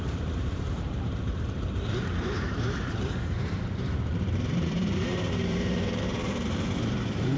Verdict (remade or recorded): remade